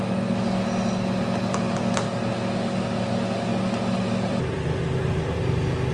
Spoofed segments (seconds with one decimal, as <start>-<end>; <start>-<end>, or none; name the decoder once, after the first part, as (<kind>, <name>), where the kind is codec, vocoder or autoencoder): 3.5-5.3 (vocoder, BigVGAN v2)